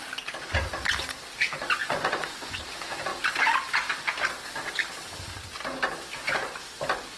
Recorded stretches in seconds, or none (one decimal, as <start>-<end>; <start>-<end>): 0.0-1.8; 2.6-7.2